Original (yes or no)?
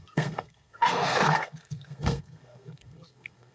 no